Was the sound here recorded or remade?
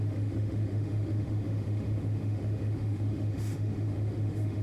remade